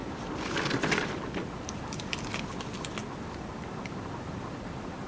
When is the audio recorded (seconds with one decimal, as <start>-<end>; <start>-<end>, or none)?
none